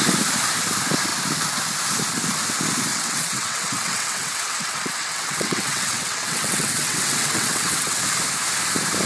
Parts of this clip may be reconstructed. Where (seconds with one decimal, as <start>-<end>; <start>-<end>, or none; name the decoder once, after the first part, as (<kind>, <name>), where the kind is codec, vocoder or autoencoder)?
2.9-8.0 (vocoder, WaveNeXt)